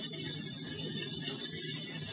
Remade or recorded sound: recorded